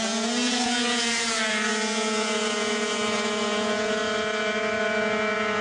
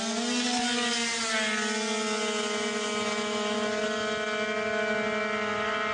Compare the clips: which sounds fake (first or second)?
first